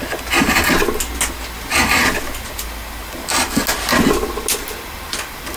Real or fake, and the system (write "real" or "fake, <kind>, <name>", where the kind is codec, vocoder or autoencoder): real